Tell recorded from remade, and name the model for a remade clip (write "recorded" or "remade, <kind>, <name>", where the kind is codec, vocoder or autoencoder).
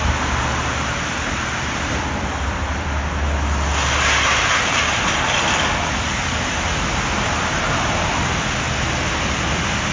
recorded